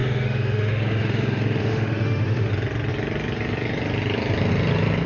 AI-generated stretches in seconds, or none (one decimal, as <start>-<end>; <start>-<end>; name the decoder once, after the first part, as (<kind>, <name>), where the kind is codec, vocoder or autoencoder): 0.0-2.5 (autoencoder, DAC-VAE)